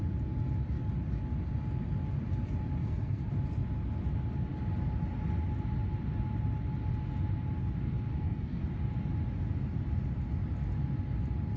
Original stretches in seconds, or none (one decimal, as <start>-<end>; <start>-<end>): 0.0-2.8; 3.3-8.1; 8.6-11.6